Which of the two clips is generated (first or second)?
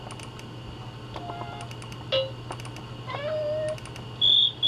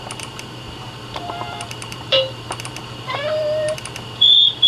second